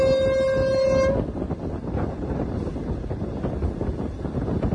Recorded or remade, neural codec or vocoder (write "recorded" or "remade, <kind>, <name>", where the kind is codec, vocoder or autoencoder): recorded